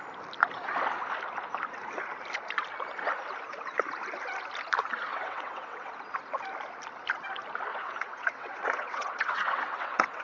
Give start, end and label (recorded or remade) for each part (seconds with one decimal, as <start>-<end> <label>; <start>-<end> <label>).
0.0-5.1 recorded; 5.1-5.9 remade; 5.9-7.7 recorded; 7.7-10.2 remade